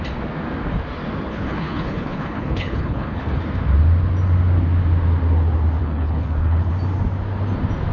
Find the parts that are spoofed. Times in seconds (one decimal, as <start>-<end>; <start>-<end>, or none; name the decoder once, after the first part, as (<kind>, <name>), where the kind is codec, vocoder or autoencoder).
1.3-3.4 (codec, HILCodec); 5.8-6.7